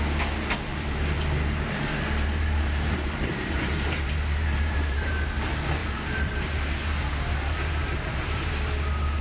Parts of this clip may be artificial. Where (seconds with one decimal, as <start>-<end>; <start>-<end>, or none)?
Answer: 0.7-5.1; 5.8-8.5

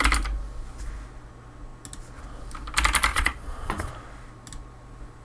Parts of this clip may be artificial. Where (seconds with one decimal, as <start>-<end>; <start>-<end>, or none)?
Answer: 3.1-3.9

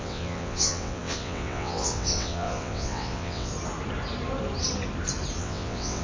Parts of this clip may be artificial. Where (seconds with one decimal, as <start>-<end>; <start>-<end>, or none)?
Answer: 0.0-3.5; 5.4-6.0

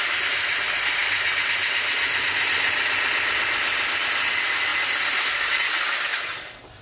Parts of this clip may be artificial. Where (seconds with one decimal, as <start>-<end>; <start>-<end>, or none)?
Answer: 4.7-5.6